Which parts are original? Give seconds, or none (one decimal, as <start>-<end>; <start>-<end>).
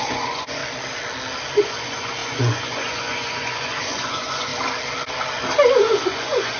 0.6-1.6; 4.5-5.8